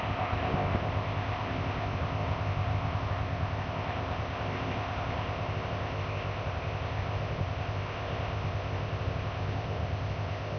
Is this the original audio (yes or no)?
no